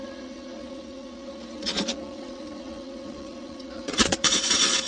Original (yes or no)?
no